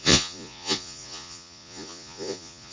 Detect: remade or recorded remade